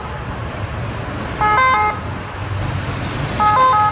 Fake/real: real